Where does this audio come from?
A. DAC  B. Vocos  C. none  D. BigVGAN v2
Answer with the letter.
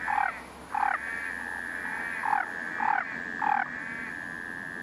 C